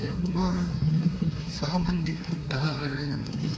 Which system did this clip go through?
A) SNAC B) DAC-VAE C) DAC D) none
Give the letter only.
A